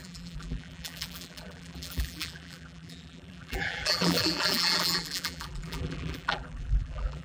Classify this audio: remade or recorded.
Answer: remade